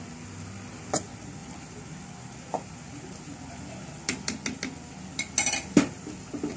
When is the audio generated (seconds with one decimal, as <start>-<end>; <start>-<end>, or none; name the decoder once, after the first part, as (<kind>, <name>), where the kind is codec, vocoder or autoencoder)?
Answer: none